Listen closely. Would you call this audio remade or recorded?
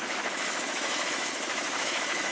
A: remade